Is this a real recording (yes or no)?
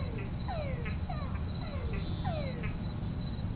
yes